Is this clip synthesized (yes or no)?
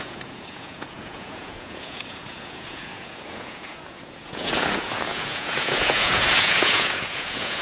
yes